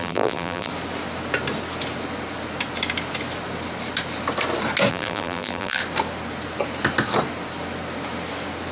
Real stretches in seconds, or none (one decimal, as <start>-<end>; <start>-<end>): 0.7-4.9; 5.8-8.7